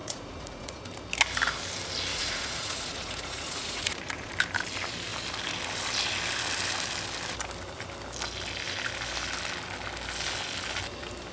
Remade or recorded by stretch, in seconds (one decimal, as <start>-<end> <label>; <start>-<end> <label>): 0.0-0.8 remade; 0.8-2.1 recorded; 2.1-4.3 remade; 4.3-11.3 recorded

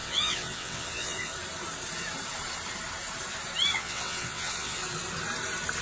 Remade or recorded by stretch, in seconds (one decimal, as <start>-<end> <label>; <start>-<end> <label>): 0.0-1.3 remade; 1.3-3.7 recorded; 3.7-4.8 remade; 4.8-5.8 recorded

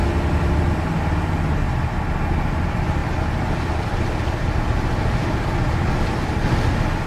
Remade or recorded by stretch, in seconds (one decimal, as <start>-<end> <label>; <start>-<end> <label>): 0.0-7.1 recorded